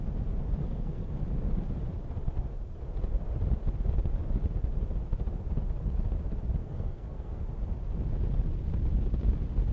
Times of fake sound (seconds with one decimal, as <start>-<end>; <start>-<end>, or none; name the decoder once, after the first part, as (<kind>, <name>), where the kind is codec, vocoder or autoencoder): 0.6-1.2 (codec, SNAC); 6.6-7.4